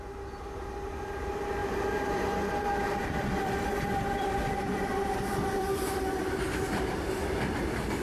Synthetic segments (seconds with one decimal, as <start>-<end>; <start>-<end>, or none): 1.6-6.4